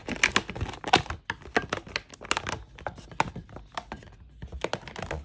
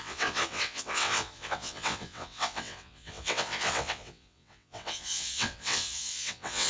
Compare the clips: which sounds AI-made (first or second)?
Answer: second